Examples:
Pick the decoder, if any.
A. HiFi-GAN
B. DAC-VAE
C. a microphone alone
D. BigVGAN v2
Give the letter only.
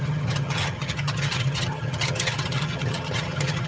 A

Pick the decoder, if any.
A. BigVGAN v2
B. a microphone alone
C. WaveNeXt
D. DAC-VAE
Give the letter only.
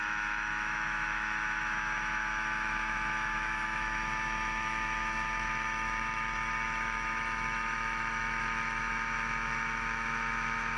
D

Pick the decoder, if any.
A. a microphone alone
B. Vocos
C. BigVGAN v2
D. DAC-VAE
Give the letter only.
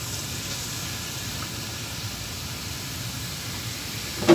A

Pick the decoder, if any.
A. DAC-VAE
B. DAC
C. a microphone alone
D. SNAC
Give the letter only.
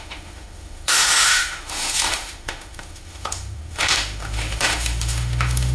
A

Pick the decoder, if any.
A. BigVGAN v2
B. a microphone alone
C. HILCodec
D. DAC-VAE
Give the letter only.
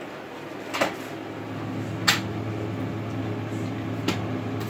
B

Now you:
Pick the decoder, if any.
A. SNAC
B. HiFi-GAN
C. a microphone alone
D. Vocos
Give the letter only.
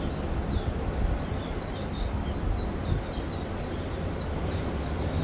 C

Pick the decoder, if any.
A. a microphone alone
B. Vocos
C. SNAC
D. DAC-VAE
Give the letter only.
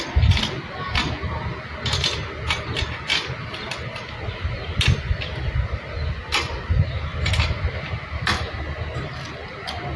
A